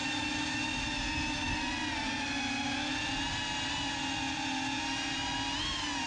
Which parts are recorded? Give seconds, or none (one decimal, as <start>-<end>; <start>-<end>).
0.0-6.1

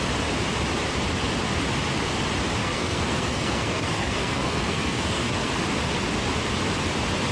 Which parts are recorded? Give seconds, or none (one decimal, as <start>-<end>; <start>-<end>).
0.0-2.6; 5.5-7.3

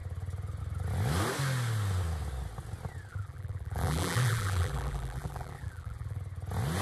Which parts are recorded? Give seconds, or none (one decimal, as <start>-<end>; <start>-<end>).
0.0-3.1; 6.2-6.8